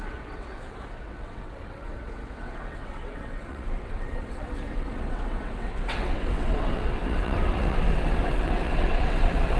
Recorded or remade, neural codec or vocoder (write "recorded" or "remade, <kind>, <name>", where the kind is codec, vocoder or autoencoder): remade, vocoder, WaveNeXt